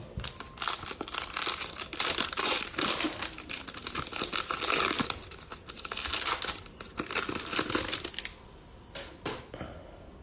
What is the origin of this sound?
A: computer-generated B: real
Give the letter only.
B